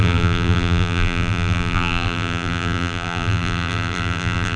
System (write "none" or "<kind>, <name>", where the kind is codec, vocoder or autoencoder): vocoder, BigVGAN v2